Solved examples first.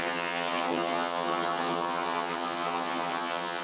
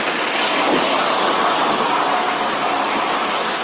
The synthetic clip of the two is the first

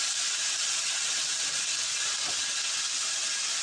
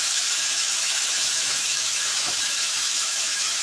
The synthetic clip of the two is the second